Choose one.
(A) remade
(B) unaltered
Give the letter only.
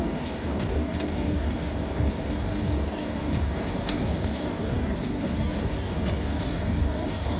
A